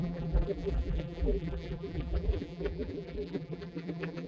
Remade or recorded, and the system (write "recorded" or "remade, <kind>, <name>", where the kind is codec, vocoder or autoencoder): remade, vocoder, BigVGAN v2